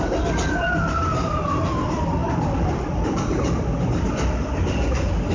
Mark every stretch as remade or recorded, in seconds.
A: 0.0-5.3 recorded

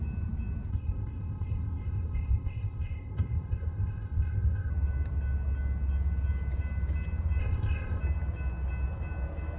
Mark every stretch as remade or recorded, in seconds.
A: 0.0-0.7 recorded; 0.7-4.7 remade; 4.7-7.4 recorded; 7.4-8.0 remade; 8.0-9.6 recorded

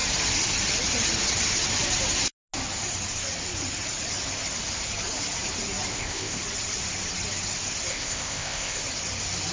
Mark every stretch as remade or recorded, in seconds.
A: 0.0-5.9 recorded; 5.9-6.4 remade; 6.4-7.9 recorded; 7.9-8.8 remade; 8.8-9.5 recorded

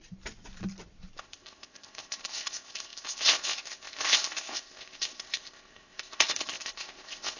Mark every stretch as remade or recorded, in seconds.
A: 0.0-1.2 recorded; 1.2-7.4 remade

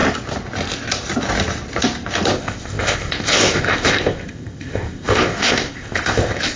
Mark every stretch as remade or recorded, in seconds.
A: 0.0-2.3 recorded; 2.3-6.6 remade

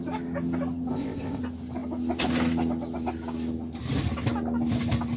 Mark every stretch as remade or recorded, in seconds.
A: 0.0-0.9 recorded; 0.9-1.4 remade; 1.4-5.2 recorded

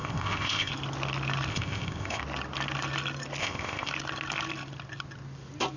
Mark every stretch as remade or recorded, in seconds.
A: 0.0-0.7 remade; 0.7-1.5 recorded; 1.5-2.2 remade; 2.2-3.4 recorded; 3.4-3.9 remade; 3.9-5.8 recorded